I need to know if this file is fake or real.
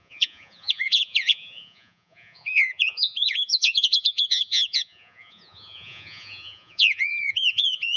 fake